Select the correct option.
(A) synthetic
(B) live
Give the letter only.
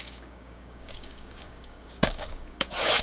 A